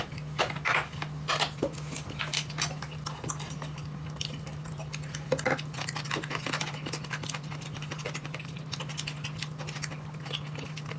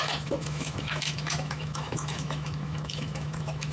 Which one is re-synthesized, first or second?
second